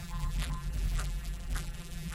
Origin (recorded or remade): remade